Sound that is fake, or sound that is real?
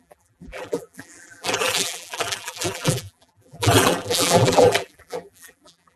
fake